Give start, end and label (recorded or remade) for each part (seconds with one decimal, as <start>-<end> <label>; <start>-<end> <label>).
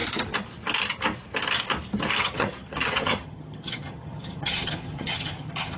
0.0-2.2 recorded; 2.2-5.8 remade